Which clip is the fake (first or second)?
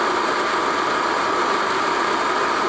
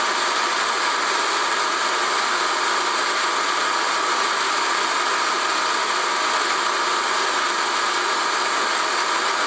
first